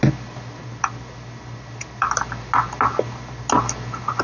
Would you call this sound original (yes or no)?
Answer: yes